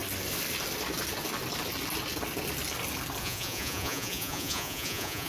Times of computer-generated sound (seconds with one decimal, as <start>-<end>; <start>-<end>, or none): 3.2-5.3